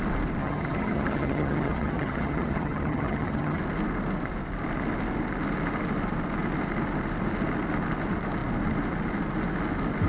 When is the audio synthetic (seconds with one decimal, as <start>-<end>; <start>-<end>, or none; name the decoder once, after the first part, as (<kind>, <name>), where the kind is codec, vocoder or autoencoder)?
0.4-3.6 (vocoder, HiFi-GAN)

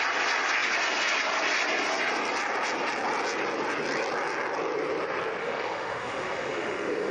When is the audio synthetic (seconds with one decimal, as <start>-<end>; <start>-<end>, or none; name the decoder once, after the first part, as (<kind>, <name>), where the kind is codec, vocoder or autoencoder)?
5.4-7.1 (autoencoder, DAC-VAE)

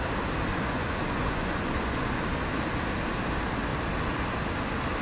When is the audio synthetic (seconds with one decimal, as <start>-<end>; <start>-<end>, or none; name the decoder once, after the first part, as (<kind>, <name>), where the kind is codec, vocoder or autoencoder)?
0.5-2.2 (vocoder, Vocos)

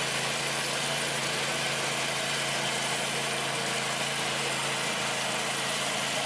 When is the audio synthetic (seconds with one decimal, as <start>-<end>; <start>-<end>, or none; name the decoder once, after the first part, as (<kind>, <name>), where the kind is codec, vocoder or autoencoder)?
none

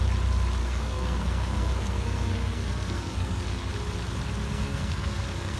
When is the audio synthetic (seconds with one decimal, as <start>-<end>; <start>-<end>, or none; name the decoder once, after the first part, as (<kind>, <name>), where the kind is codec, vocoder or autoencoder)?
0.6-3.7 (codec, SNAC); 4.5-5.6